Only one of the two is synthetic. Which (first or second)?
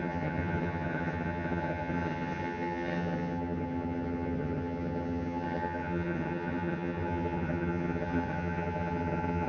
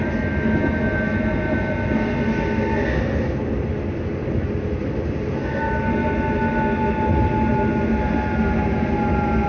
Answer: first